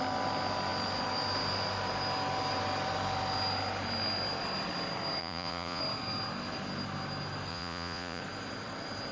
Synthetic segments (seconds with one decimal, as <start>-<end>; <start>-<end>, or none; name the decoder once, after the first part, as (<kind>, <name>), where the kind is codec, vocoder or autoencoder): 5.2-5.8 (vocoder, Vocos); 7.5-8.2